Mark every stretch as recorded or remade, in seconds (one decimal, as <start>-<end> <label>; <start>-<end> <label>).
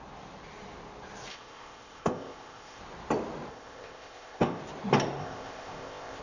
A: 0.0-1.3 recorded; 1.3-2.8 remade; 2.8-3.5 recorded; 3.5-4.6 remade; 4.6-5.2 recorded; 5.2-6.2 remade